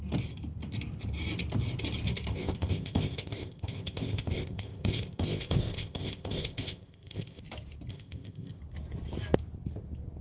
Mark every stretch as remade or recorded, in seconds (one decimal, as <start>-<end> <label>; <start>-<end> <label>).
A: 0.0-2.3 recorded; 2.3-7.4 remade; 7.4-7.9 recorded; 7.9-8.6 remade; 8.6-10.2 recorded

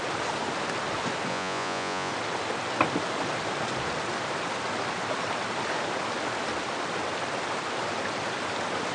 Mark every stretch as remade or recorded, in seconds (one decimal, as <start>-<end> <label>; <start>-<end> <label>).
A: 0.0-1.3 recorded; 1.3-2.1 remade; 2.1-8.9 recorded

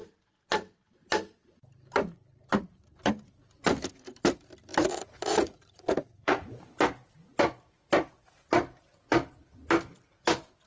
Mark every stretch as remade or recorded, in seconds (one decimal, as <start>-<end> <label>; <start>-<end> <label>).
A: 0.0-4.9 recorded; 4.9-6.6 remade; 6.6-10.7 recorded